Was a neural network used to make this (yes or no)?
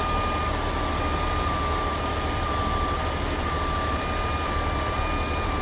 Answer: no